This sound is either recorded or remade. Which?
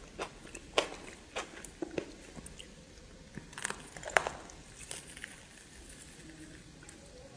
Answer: recorded